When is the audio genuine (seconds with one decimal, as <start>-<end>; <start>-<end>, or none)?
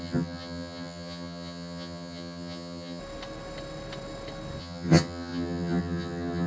3.0-4.6